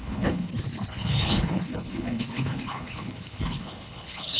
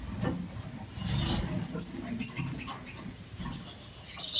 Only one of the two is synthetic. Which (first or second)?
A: first